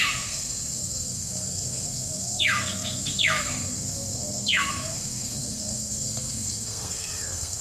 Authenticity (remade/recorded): remade